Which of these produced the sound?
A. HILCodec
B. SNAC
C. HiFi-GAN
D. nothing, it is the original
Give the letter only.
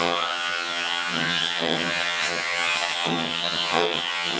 C